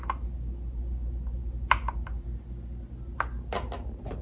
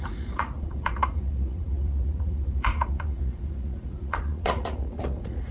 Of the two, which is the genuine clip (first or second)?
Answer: first